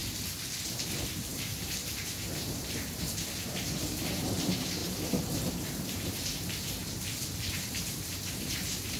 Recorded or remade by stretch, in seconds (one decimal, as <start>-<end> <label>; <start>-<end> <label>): 0.0-0.5 recorded; 0.5-6.8 remade; 6.8-7.5 recorded; 7.5-9.0 remade